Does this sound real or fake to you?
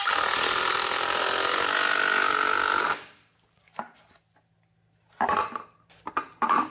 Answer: real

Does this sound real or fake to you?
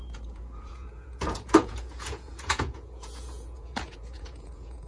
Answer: fake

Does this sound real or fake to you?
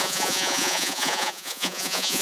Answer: fake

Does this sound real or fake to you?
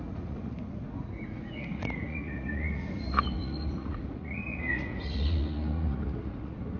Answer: fake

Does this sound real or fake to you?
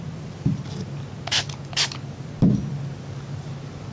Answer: real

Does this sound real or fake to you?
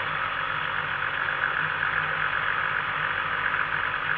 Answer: real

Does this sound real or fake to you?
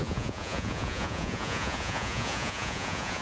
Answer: fake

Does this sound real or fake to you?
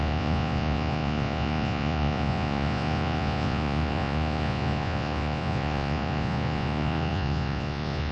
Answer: fake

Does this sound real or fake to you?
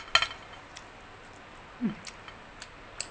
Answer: real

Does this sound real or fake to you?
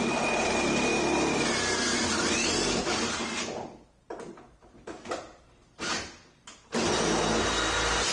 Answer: real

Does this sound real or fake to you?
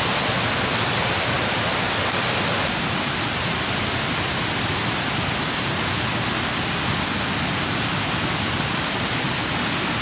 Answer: real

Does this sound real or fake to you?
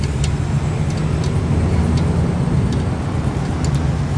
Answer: real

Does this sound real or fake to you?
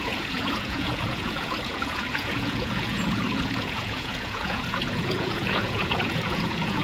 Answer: fake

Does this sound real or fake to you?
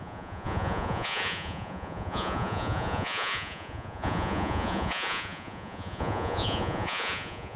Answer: fake